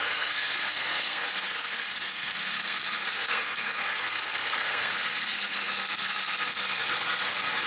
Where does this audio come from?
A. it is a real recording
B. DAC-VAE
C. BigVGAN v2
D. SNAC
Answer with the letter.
D